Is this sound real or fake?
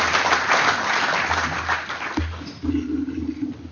real